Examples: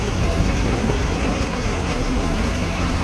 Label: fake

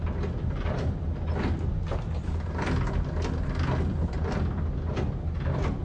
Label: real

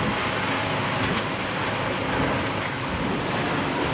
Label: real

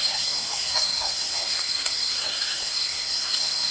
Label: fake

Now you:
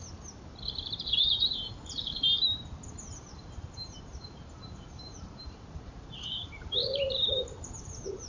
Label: fake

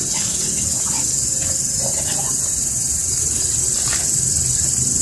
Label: real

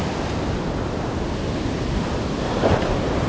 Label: real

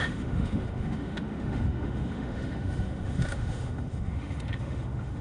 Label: fake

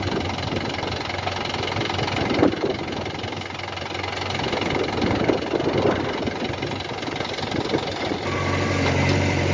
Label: real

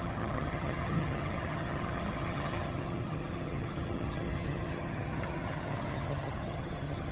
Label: fake